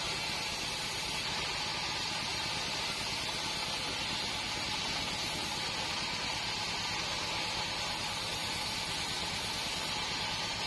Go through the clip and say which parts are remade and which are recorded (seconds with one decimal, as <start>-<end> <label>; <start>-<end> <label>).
0.0-2.3 recorded; 2.3-2.8 remade; 2.8-10.7 recorded